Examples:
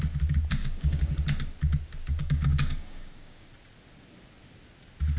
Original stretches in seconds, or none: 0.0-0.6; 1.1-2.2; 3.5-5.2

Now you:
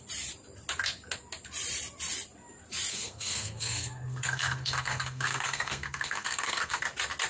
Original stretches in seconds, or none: 0.0-2.9; 6.8-7.3

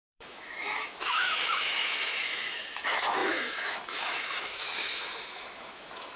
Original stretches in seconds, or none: none